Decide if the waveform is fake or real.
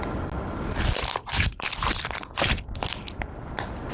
real